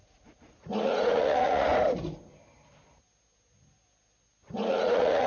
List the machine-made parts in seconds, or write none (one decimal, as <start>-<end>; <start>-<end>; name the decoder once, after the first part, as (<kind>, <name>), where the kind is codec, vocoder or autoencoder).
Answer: 0.0-1.7 (vocoder, Vocos); 4.7-5.3